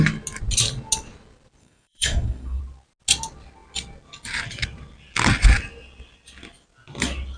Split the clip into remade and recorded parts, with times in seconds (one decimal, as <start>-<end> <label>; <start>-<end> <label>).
0.0-1.6 recorded; 1.6-2.6 remade; 2.6-7.4 recorded